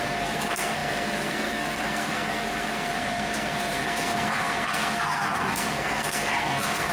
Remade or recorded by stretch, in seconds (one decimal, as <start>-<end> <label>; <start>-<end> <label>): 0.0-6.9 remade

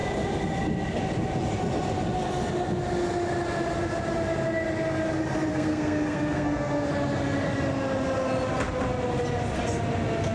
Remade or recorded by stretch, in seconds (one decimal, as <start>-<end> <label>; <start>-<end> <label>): 0.0-5.5 recorded; 5.5-6.9 remade; 6.9-10.3 recorded

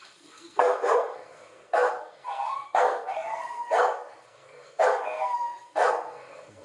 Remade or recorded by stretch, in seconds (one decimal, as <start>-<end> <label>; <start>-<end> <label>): 0.0-6.6 remade